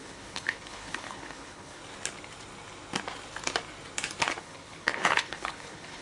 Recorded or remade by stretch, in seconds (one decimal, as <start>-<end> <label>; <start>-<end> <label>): 0.0-1.8 remade; 1.8-4.4 recorded; 4.4-6.0 remade